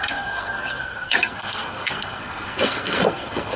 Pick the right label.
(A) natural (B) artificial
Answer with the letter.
B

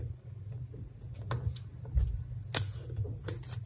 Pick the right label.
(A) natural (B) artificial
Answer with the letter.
A